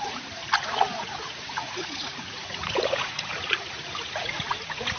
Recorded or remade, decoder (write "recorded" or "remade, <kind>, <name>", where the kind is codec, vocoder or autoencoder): remade, vocoder, Vocos